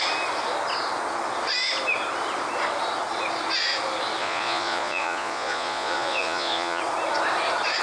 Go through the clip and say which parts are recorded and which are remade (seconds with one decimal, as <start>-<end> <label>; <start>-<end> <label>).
0.0-4.2 recorded; 4.2-6.8 remade; 6.8-7.8 recorded